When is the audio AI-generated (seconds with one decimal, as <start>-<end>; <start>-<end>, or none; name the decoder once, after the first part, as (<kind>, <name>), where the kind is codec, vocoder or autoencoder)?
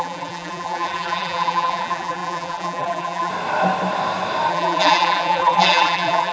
0.0-3.3 (vocoder, BigVGAN v2); 4.5-6.3